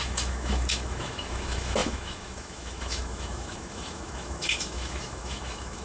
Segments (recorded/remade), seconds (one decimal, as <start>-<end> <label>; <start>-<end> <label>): 0.0-5.8 remade